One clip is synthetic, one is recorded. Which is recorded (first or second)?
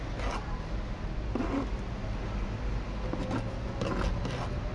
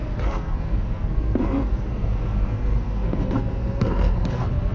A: first